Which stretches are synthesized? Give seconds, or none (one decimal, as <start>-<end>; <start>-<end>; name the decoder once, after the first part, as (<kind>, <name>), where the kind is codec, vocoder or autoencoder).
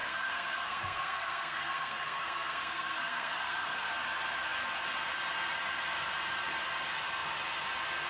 0.0-3.9 (codec, SNAC)